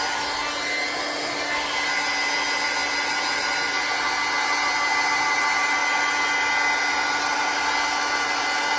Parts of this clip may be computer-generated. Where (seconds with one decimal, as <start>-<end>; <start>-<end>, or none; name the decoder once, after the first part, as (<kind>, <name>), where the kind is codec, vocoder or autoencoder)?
none